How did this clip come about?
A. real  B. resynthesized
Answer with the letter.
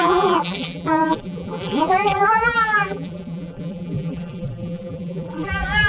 B